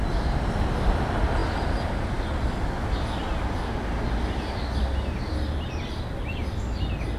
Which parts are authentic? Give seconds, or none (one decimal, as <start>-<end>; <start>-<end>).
0.0-7.2

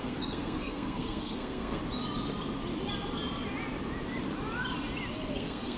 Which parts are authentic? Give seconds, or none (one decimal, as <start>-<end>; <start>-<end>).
1.8-5.3

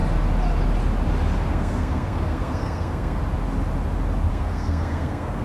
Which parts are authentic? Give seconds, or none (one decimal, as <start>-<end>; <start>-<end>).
0.0-1.5; 3.2-4.3

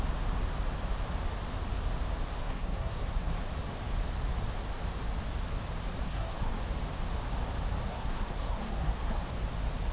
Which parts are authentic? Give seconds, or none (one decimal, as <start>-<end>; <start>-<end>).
0.0-2.4; 3.3-6.0; 6.6-7.8; 9.2-9.9

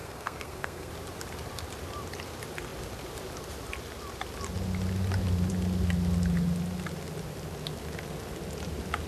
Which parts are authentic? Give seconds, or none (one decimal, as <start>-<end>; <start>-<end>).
0.9-9.1